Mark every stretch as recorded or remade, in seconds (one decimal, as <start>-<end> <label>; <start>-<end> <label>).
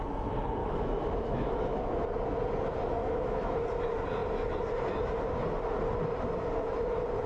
0.0-0.6 recorded; 0.6-1.9 remade; 1.9-3.0 recorded; 3.0-3.6 remade; 3.6-7.3 recorded